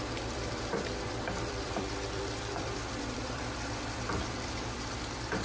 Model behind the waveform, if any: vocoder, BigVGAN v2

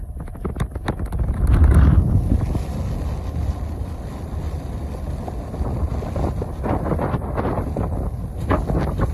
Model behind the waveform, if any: none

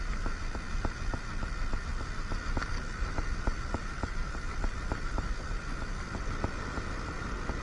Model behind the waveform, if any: none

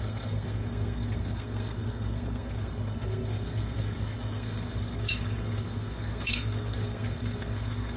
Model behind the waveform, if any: codec, SNAC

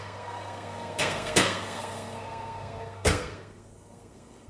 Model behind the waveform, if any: codec, SNAC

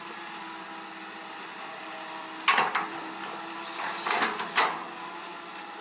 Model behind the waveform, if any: none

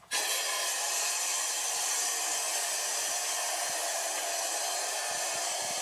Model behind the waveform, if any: none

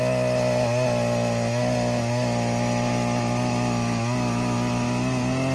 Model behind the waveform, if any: none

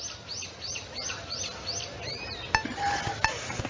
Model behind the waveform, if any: none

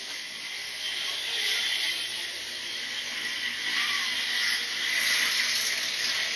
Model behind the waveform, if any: none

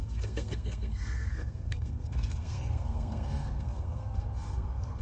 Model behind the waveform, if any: codec, SNAC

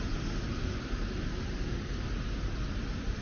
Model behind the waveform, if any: none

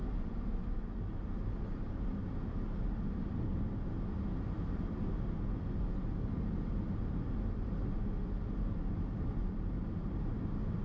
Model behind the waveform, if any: none